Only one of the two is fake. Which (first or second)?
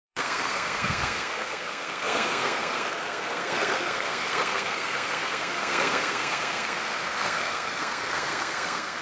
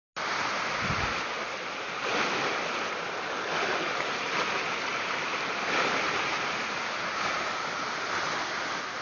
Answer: first